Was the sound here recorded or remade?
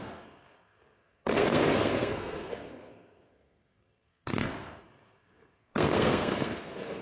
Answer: remade